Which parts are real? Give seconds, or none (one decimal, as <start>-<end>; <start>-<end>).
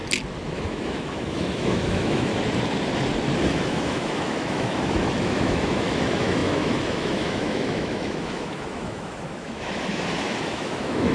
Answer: 0.0-0.5; 2.3-3.5